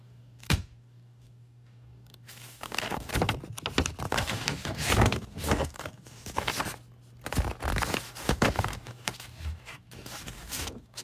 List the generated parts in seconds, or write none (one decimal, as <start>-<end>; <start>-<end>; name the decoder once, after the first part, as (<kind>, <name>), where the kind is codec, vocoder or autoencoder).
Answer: 0.0-3.1 (codec, DAC); 4.1-6.5; 8.0-11.0